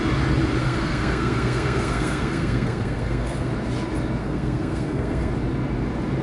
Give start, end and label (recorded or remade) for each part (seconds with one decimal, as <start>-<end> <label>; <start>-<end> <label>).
0.0-0.6 recorded; 0.6-3.5 remade; 3.5-4.2 recorded; 4.2-5.3 remade; 5.3-6.2 recorded